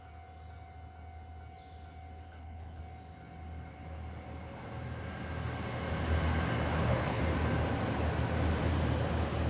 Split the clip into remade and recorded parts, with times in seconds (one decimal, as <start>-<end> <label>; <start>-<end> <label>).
0.0-2.3 recorded; 2.3-2.8 remade; 2.8-6.7 recorded; 6.7-7.2 remade; 7.2-9.5 recorded